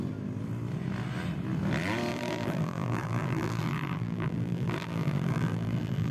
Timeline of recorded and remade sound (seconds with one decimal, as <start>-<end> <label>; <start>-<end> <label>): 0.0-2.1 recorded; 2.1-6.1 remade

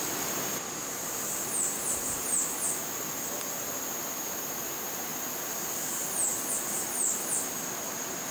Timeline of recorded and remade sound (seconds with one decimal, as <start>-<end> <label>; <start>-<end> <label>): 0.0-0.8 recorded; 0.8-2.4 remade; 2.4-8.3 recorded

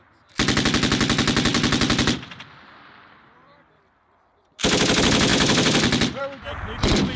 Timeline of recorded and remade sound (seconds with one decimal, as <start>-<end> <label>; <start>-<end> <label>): 0.0-1.5 recorded; 1.5-4.8 remade; 4.8-7.2 recorded

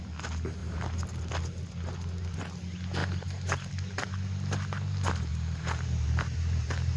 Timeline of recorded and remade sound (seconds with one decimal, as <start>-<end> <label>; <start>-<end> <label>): 0.0-0.6 recorded; 0.6-1.3 remade; 1.3-3.0 recorded; 3.0-3.7 remade; 3.7-5.3 recorded; 5.3-7.0 remade

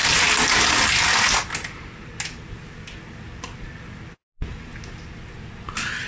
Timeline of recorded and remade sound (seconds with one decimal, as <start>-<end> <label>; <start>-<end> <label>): 0.0-6.1 recorded

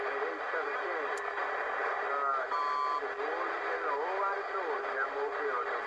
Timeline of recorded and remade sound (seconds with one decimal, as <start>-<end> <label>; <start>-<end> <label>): 0.0-1.4 recorded; 1.4-1.9 remade; 1.9-5.9 recorded

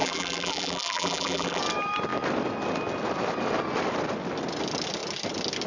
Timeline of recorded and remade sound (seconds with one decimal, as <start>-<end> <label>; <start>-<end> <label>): 0.0-1.6 remade; 1.6-5.7 recorded

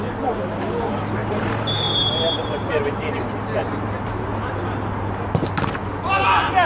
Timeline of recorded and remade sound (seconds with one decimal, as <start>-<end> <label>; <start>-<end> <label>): 0.0-1.2 recorded; 1.2-2.8 remade; 2.8-6.7 recorded